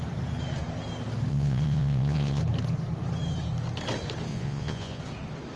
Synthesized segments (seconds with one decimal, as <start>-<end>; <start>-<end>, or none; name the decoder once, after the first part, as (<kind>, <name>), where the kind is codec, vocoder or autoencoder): 1.3-2.4 (vocoder, Vocos); 4.3-5.0